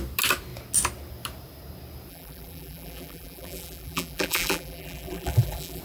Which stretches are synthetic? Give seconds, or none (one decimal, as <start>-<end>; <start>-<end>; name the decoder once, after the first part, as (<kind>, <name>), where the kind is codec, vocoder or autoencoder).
2.1-5.8 (vocoder, BigVGAN v2)